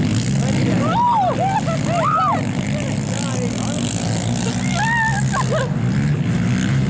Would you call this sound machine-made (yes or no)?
no